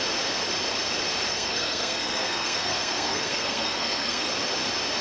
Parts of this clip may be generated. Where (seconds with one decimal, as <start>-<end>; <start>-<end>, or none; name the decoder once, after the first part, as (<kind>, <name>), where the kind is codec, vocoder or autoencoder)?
1.3-4.3 (codec, SNAC)